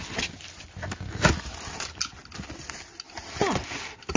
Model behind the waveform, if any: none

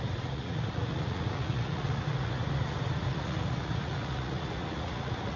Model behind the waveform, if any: vocoder, Vocos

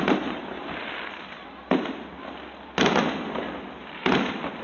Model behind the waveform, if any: none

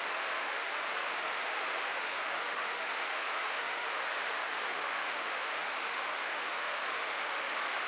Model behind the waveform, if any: autoencoder, DAC-VAE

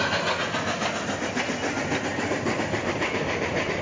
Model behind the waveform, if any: none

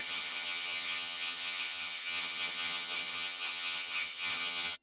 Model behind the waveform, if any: vocoder, HiFi-GAN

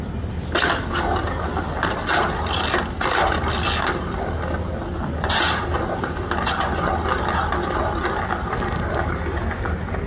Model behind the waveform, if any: none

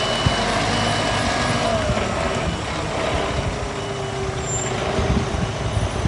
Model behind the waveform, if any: none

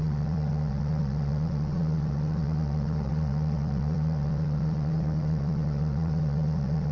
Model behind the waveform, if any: vocoder, WaveNeXt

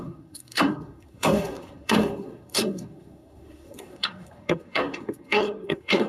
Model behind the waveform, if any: codec, SNAC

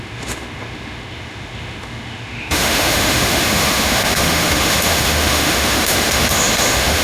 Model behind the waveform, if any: autoencoder, DAC-VAE